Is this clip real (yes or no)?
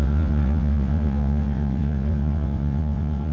no